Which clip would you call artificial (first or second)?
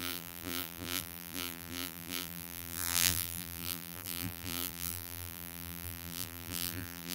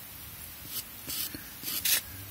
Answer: first